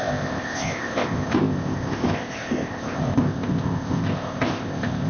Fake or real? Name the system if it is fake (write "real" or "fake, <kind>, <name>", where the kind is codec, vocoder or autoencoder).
fake, codec, ZipCodec